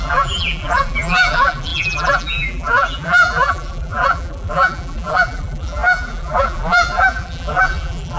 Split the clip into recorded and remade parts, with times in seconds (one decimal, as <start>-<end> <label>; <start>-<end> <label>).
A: 0.0-8.2 remade